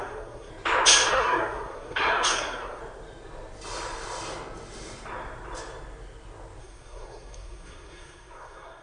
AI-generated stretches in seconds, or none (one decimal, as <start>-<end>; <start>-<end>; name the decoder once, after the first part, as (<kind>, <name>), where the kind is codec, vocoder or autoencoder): 0.0-0.5 (codec, SNAC); 1.1-2.8; 6.6-8.8